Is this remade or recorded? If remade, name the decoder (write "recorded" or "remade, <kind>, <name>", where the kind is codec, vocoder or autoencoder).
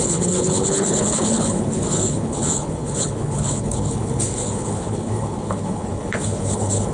remade, codec, HILCodec